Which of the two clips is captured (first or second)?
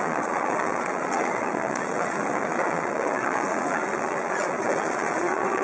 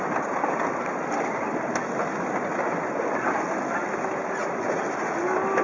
second